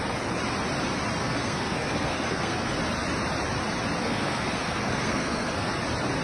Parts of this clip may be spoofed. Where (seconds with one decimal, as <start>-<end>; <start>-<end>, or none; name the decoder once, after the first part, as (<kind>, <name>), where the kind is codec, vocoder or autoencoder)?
1.2-2.7 (codec, SNAC); 4.0-5.7